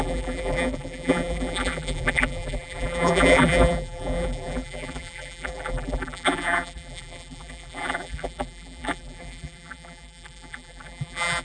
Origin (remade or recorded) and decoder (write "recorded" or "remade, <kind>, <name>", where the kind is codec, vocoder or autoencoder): remade, vocoder, BigVGAN v2